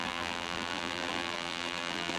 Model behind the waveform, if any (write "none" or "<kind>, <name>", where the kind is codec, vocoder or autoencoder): vocoder, BigVGAN v2